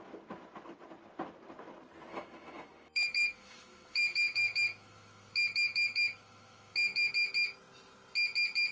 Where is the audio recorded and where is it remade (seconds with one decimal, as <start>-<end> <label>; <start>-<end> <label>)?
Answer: 0.0-2.1 recorded; 2.1-7.1 remade; 7.1-8.7 recorded